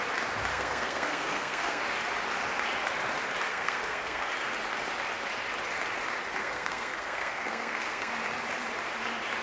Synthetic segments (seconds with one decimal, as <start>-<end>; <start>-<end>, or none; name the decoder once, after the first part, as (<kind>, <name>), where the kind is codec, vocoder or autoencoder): 0.5-1.8 (codec, SNAC); 3.5-4.3; 6.4-8.1